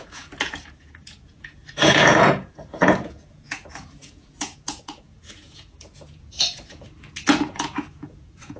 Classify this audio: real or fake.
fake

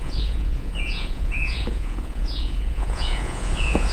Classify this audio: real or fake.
fake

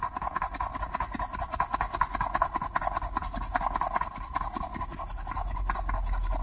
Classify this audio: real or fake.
real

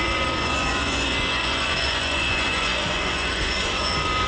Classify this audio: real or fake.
fake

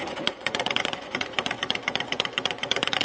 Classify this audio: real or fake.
fake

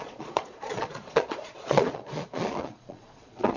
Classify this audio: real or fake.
fake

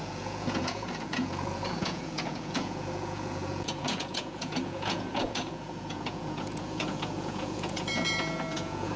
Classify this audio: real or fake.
fake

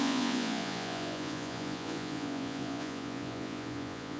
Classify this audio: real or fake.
fake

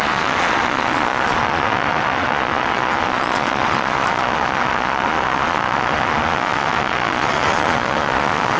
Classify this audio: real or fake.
fake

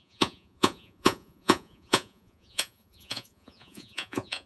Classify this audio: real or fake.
fake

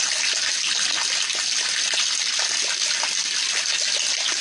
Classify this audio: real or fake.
real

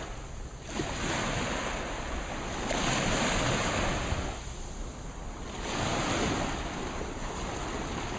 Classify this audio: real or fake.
real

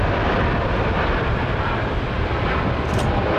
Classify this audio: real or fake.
real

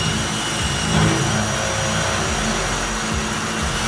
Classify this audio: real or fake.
real